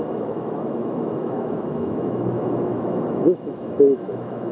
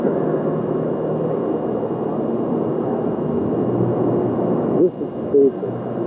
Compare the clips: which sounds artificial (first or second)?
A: first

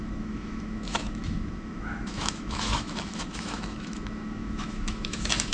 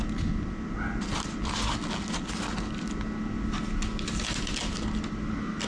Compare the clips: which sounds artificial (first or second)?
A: first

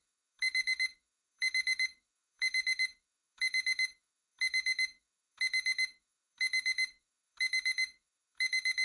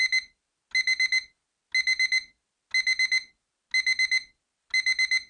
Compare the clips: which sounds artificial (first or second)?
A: first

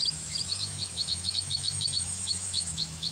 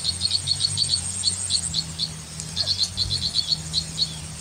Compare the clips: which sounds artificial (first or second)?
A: first